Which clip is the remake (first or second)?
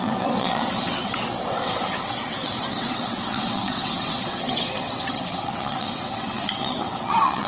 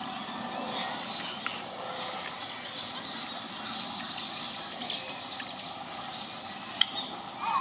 first